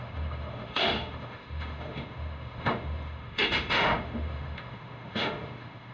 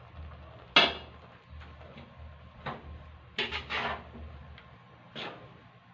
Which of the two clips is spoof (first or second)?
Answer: first